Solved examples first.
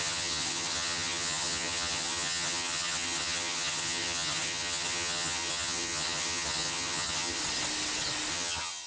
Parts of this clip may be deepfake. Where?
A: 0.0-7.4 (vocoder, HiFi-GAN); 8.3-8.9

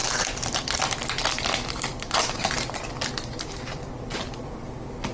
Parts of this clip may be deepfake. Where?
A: 0.0-3.1 (vocoder, BigVGAN v2)

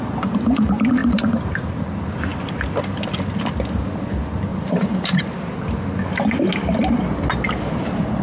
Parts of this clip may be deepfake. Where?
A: 1.0-1.7 (vocoder, BigVGAN v2); 4.5-5.2

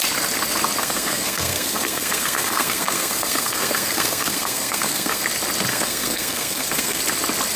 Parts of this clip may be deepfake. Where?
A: 0.8-5.2 (codec, SNAC); 5.7-7.0

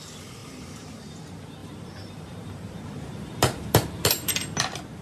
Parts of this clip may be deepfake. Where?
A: 0.4-1.1 (vocoder, BigVGAN v2); 1.6-4.3

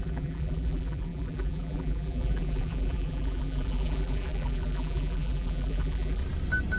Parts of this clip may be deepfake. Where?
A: 0.0-6.2 (vocoder, BigVGAN v2)